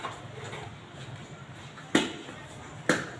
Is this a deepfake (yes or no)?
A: no